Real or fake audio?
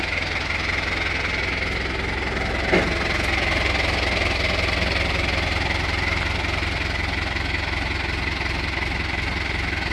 real